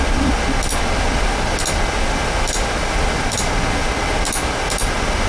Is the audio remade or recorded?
recorded